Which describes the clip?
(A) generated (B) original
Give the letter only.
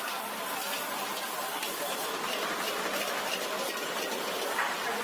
B